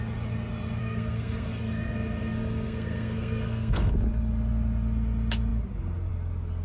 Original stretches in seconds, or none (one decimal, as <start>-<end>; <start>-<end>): 0.0-0.8; 3.9-6.6